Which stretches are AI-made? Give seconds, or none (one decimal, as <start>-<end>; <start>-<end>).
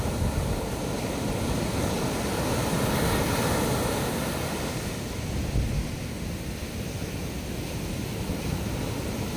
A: none